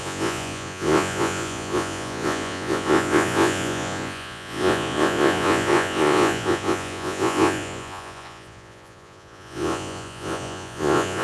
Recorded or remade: remade